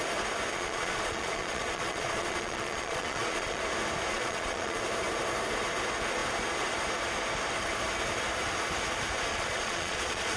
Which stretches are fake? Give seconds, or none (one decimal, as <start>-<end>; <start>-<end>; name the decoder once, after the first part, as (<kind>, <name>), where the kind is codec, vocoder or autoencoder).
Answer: 0.5-3.6 (vocoder, Vocos); 4.1-4.8; 9.3-10.4